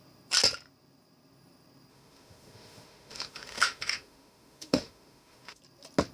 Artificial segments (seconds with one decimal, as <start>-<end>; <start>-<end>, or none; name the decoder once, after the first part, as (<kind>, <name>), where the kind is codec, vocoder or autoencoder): 1.9-5.6 (autoencoder, DAC-VAE)